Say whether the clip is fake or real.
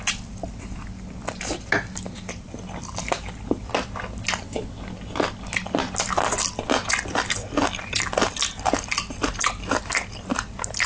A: real